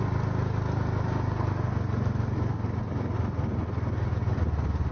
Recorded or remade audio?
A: recorded